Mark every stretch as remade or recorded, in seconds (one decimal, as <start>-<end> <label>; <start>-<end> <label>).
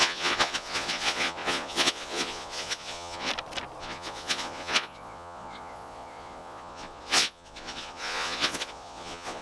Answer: 0.0-3.3 remade; 3.3-3.8 recorded; 3.8-9.4 remade